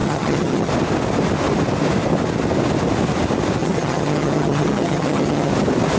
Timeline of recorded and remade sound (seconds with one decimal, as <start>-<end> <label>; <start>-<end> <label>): 0.0-0.7 remade; 0.7-3.6 recorded; 3.6-5.5 remade; 5.5-6.0 recorded